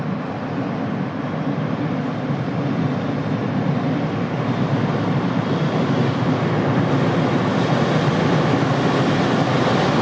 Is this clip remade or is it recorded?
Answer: recorded